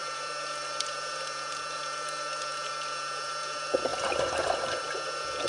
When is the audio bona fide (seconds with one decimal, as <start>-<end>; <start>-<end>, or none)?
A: none